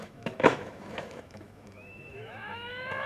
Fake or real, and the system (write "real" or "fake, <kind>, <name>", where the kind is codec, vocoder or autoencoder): fake, autoencoder, DAC-VAE